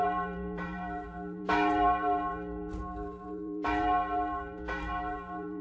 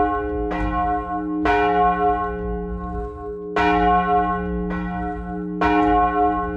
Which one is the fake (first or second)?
first